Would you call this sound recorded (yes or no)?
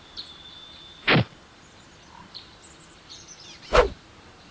no